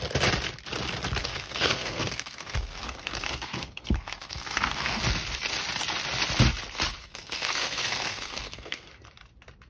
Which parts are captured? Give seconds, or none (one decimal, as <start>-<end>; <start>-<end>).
0.0-1.2; 5.0-7.0; 8.9-9.7